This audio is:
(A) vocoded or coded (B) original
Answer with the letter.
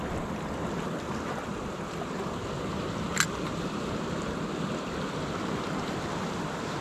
B